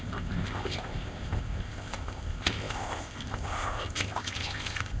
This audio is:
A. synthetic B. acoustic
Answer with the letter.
A